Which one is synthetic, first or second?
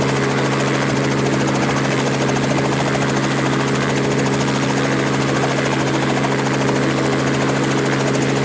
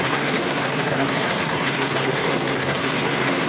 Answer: second